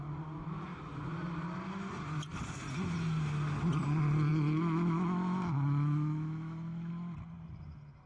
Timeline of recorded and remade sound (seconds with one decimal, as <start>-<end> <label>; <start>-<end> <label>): 0.0-4.3 recorded; 4.3-6.9 remade; 6.9-8.1 recorded